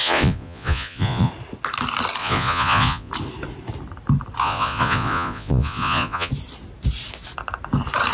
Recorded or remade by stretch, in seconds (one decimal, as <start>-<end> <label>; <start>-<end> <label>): 0.0-1.3 remade; 1.3-2.2 recorded; 2.2-3.1 remade; 3.1-4.4 recorded; 4.4-6.3 remade; 6.3-8.1 recorded